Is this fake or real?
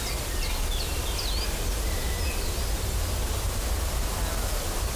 real